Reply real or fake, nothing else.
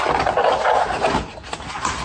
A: real